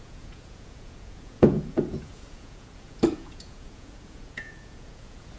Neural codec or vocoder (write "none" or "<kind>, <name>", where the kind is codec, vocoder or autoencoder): vocoder, Vocos